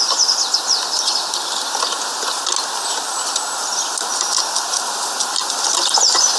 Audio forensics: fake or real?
real